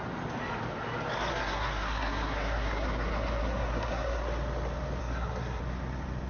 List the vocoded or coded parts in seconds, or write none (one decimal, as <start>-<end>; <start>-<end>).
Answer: 1.3-4.2; 5.0-5.6